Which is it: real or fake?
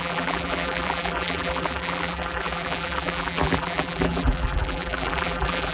fake